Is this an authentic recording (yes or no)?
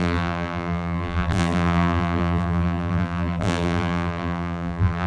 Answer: no